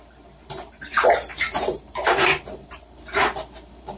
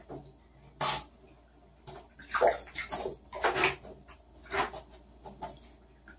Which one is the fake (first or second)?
first